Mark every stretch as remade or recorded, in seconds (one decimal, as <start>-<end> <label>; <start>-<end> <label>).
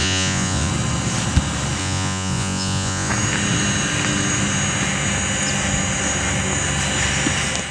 0.0-0.7 remade; 0.7-1.8 recorded; 1.8-3.1 remade; 3.1-7.7 recorded